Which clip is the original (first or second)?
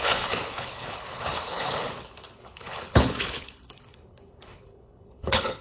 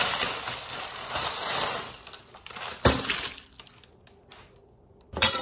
second